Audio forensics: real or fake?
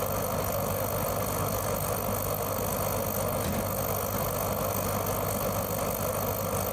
real